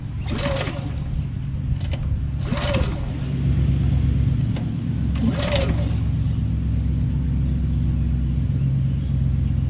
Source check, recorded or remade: recorded